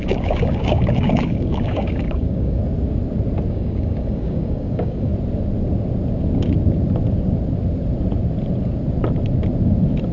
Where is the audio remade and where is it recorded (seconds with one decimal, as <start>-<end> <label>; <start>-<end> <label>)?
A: 0.0-2.6 remade; 2.6-3.5 recorded; 3.5-5.1 remade; 5.1-10.1 recorded